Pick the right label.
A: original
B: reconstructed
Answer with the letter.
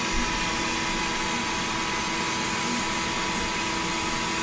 A